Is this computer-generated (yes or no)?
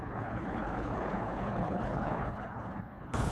yes